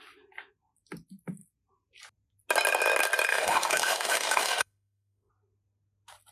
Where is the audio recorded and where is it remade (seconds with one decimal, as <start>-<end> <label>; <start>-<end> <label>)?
0.0-3.3 recorded; 3.3-5.3 remade; 5.3-6.3 recorded